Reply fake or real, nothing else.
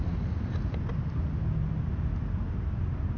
real